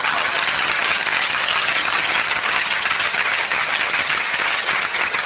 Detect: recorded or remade remade